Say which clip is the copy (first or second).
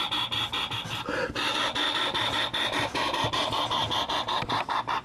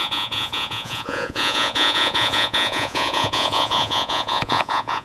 second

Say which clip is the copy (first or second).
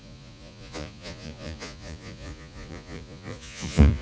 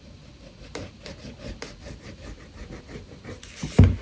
first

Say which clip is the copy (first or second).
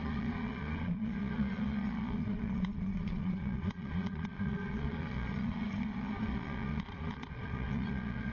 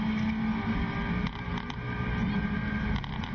first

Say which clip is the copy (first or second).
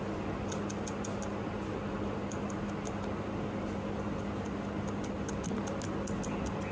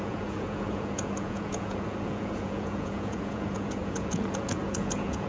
second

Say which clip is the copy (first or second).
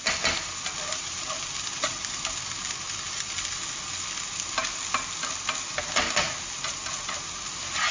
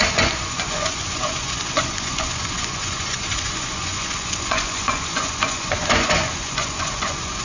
second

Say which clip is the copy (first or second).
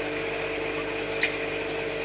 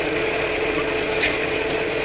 second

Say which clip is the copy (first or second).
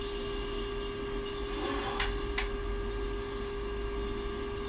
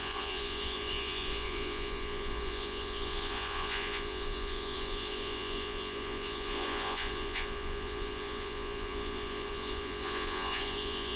second